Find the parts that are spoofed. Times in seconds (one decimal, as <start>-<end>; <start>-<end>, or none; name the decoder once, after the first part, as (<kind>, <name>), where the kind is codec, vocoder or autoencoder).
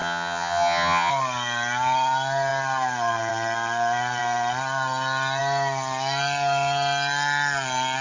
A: 0.0-1.1 (vocoder, HiFi-GAN)